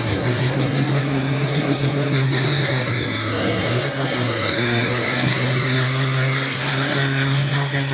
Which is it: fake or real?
fake